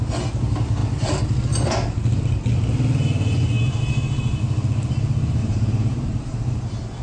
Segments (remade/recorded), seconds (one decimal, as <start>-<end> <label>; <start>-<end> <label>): 0.0-5.4 recorded; 5.4-6.6 remade; 6.6-7.0 recorded